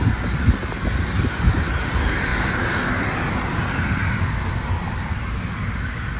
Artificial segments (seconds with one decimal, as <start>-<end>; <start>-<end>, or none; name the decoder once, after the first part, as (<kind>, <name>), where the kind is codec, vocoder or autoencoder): none